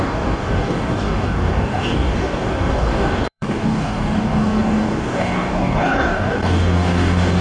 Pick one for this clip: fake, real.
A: fake